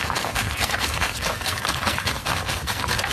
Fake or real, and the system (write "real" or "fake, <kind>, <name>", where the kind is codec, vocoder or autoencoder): fake, codec, SNAC